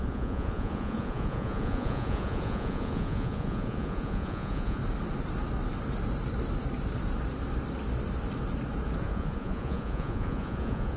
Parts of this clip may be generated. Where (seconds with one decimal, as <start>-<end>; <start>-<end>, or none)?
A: 0.0-4.8; 9.0-11.0